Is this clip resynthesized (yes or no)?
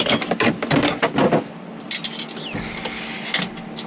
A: no